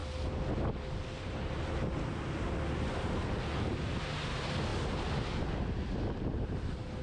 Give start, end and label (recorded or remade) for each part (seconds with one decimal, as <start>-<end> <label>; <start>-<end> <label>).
0.0-7.0 recorded